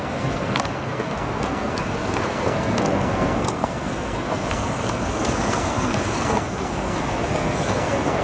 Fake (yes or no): yes